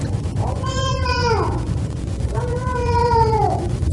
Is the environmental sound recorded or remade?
remade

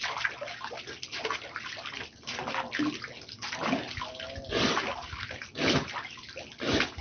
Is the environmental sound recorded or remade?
recorded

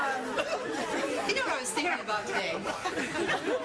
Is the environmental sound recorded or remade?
recorded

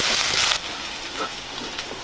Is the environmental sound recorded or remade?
recorded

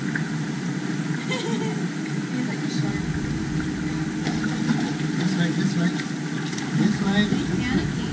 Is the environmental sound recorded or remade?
recorded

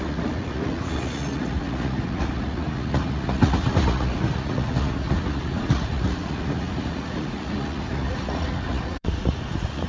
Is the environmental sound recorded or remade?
remade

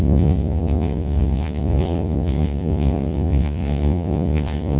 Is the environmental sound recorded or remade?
remade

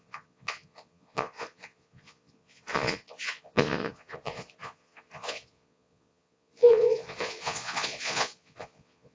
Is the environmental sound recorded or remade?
remade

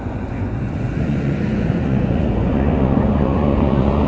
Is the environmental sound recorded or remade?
remade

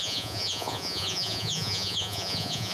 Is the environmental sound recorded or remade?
remade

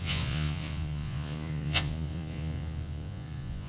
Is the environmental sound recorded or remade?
remade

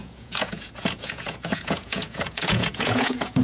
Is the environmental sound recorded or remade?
remade